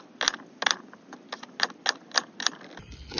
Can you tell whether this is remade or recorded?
recorded